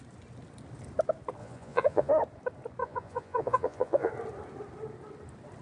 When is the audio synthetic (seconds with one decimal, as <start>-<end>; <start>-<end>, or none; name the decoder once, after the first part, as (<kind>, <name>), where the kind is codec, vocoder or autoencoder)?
1.4-2.1 (vocoder, Vocos); 2.8-4.1